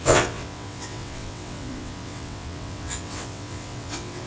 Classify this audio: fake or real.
fake